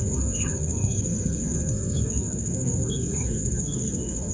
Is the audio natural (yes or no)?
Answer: no